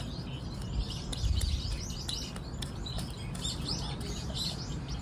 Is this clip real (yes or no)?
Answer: yes